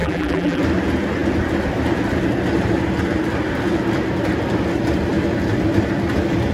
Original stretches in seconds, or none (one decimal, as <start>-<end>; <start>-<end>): 0.6-6.5